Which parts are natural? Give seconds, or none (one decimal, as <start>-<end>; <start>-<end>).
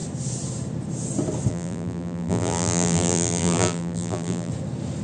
0.0-1.5; 4.5-5.0